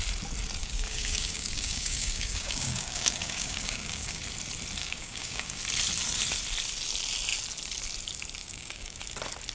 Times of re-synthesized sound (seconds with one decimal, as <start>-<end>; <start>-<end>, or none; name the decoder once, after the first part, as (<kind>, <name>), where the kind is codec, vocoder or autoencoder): 0.6-4.2 (codec, DAC); 4.8-5.6; 8.4-9.0